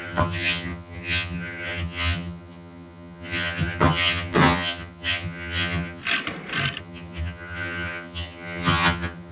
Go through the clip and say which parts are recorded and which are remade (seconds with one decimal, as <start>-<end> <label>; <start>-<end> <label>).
0.0-6.0 remade; 6.0-6.8 recorded; 6.8-9.3 remade